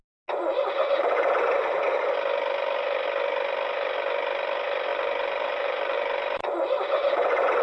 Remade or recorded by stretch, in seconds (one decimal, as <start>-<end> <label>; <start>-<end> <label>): 0.0-0.4 recorded; 0.4-2.0 remade; 2.0-4.9 recorded; 4.9-7.6 remade